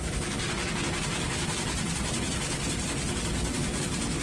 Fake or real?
real